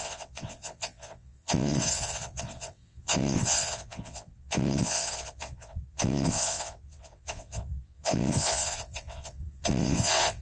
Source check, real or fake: fake